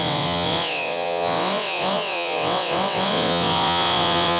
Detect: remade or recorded remade